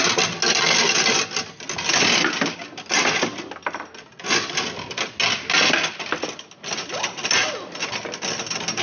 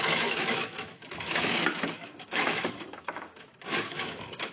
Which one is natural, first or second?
first